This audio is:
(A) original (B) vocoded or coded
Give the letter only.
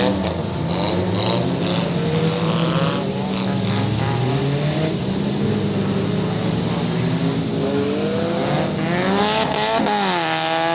A